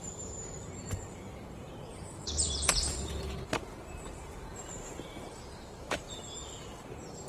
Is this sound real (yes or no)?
no